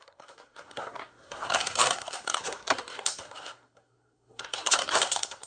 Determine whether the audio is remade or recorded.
remade